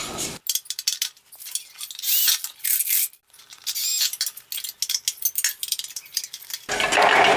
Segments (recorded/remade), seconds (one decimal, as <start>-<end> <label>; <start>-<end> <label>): 0.0-7.4 recorded